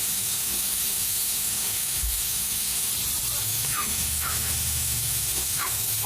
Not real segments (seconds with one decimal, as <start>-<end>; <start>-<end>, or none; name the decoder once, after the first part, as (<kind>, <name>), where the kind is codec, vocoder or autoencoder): 0.0-2.9 (autoencoder, DAC-VAE); 3.4-6.1